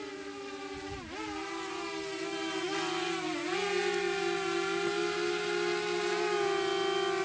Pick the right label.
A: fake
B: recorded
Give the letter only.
B